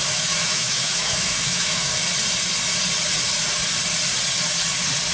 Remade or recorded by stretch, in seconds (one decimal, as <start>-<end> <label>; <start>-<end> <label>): 0.0-1.9 remade; 1.9-5.1 recorded